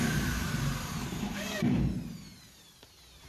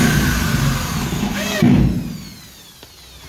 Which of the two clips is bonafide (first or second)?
second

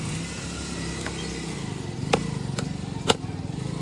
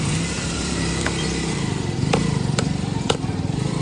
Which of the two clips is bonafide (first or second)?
first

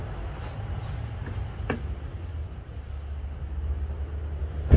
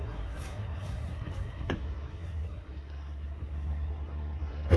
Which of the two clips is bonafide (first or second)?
first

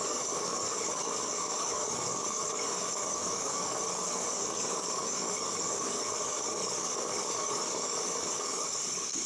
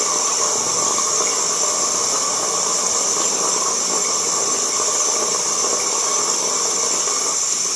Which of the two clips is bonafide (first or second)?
second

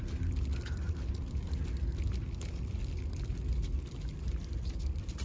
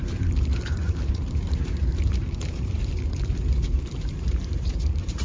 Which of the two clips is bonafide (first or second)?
first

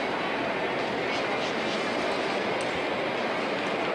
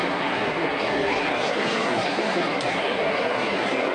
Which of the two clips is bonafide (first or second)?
first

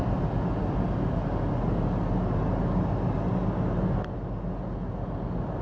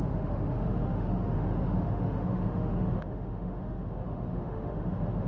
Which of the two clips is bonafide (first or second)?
first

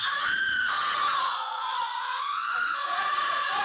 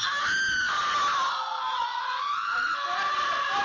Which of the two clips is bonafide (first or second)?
second